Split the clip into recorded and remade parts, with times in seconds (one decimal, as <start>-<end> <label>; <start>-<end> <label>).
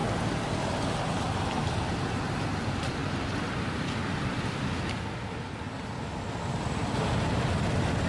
0.0-8.1 recorded